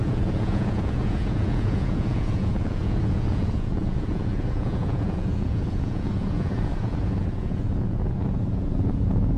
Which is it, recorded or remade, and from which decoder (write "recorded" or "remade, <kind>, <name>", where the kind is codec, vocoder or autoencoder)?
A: remade, vocoder, Vocos